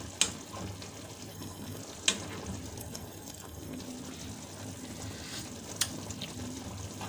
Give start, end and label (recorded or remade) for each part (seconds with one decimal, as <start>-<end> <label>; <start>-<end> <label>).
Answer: 0.0-1.3 recorded; 1.3-1.8 remade; 1.8-2.8 recorded; 2.8-3.8 remade; 3.8-7.1 recorded